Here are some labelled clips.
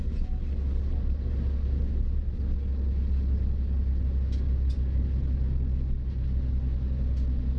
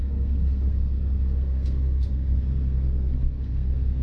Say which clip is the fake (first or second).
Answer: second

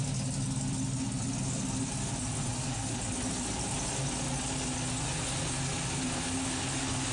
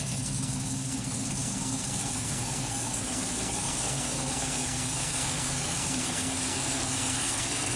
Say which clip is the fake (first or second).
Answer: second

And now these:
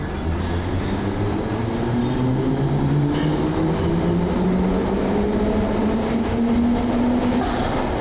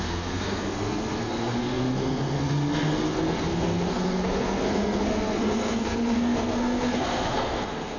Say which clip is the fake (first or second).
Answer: second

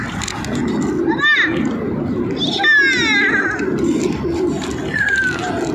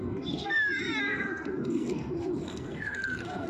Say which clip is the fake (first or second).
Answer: second